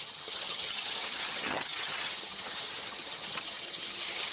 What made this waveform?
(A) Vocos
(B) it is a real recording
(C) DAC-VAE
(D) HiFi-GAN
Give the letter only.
D